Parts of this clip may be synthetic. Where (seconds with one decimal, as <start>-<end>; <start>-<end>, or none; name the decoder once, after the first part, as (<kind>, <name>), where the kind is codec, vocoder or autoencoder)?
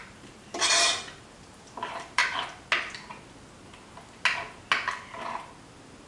0.0-2.2 (vocoder, BigVGAN v2)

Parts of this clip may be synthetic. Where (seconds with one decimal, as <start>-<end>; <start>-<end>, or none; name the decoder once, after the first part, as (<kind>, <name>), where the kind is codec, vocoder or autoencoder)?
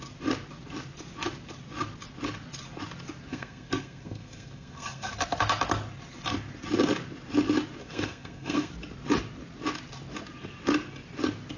3.3-5.1 (codec, SNAC); 7.8-8.7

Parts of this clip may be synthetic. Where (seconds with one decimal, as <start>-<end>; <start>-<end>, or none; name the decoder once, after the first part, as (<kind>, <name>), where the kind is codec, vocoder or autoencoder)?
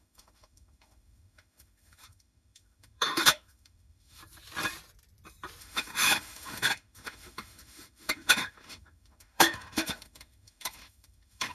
0.0-4.2 (autoencoder, DAC-VAE); 5.6-11.5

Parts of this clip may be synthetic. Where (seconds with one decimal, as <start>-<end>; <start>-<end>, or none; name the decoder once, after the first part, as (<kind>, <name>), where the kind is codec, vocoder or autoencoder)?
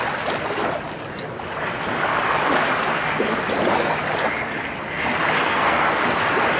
5.4-6.0 (codec, SNAC)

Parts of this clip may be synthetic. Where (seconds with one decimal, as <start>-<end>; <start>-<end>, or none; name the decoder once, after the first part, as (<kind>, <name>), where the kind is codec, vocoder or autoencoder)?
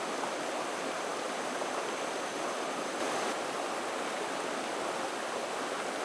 none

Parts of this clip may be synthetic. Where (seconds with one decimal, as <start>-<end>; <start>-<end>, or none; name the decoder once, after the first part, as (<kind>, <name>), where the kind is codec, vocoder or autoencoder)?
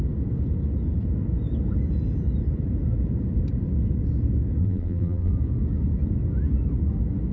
4.6-5.3 (vocoder, BigVGAN v2)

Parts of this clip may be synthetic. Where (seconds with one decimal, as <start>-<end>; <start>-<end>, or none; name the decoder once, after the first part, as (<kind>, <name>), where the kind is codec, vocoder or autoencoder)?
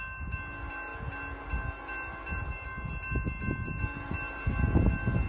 none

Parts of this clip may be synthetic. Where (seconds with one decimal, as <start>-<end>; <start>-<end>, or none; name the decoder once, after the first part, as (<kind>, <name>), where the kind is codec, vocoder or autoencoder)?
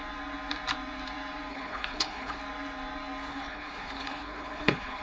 1.5-2.4 (codec, HILCodec); 3.3-5.0